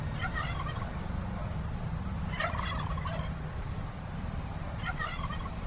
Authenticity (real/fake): real